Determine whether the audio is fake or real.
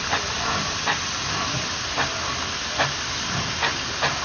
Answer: real